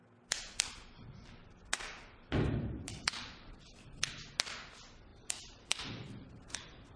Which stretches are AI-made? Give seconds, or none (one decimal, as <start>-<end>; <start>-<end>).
1.4-3.6; 5.1-7.0